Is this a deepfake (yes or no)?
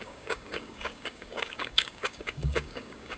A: yes